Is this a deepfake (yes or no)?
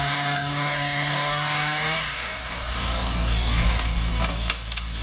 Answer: yes